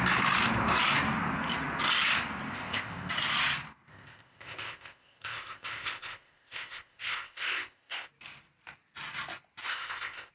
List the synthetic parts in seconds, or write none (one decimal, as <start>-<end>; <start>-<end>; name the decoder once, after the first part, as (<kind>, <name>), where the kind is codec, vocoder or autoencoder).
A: 2.5-3.1 (codec, ZipCodec); 3.9-8.1; 9.6-10.3